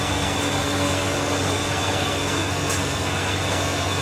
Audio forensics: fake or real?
fake